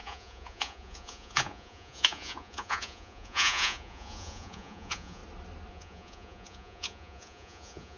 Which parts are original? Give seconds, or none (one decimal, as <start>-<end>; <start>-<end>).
5.2-5.7